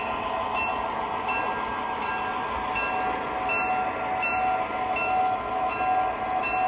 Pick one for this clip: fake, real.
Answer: real